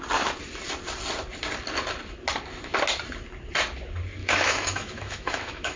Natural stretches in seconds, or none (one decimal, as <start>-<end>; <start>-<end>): 0.0-4.2